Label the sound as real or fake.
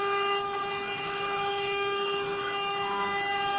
fake